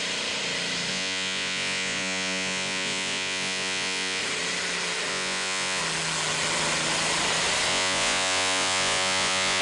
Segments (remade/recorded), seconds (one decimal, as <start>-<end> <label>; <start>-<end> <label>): 0.0-0.9 recorded; 0.9-4.2 remade; 4.2-5.1 recorded; 5.1-5.8 remade; 5.8-7.7 recorded; 7.7-9.6 remade